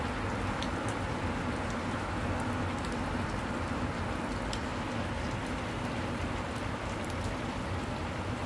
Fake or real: real